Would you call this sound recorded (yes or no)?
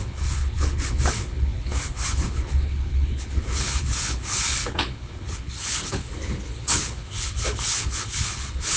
no